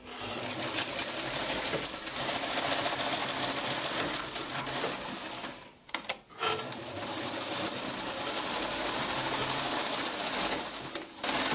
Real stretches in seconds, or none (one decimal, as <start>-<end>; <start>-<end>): 0.0-11.5